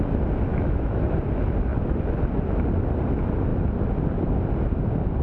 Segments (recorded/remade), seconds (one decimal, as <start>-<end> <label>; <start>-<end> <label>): 0.0-0.5 recorded; 0.5-1.2 remade; 1.2-5.2 recorded